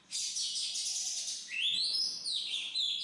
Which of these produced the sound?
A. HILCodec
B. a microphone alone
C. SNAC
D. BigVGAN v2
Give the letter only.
B